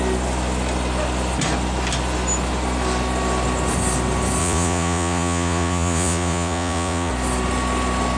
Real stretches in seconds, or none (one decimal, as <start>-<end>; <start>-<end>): 0.0-4.4; 7.1-8.2